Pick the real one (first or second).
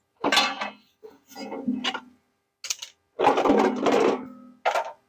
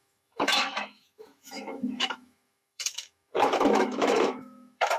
first